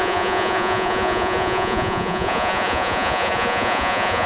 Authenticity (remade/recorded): remade